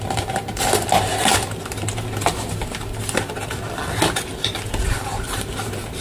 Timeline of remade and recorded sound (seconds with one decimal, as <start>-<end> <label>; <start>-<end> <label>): 0.0-1.3 remade; 1.3-4.9 recorded; 4.9-6.0 remade